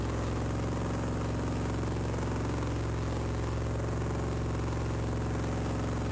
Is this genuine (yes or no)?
yes